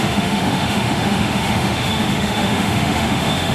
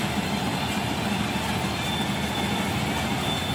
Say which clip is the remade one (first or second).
first